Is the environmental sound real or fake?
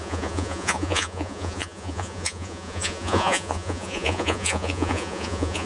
fake